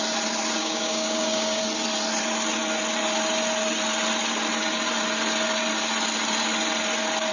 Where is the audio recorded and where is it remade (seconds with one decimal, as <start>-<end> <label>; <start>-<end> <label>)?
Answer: 0.0-0.6 recorded; 0.6-1.6 remade; 1.6-7.3 recorded